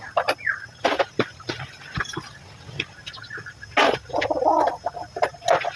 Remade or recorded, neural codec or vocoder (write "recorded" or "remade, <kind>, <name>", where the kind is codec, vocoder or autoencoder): recorded